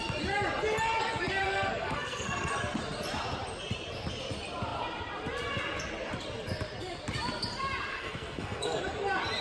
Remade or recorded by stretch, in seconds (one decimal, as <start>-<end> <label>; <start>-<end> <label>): 0.0-1.4 recorded; 1.4-2.5 remade; 2.5-7.9 recorded; 7.9-8.8 remade; 8.8-9.4 recorded